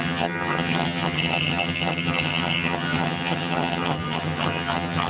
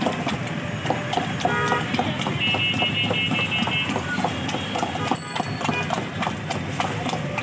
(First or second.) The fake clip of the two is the first